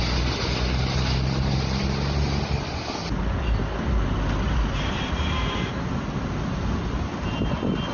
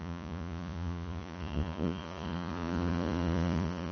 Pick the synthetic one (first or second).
second